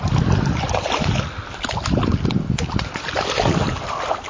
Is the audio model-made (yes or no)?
no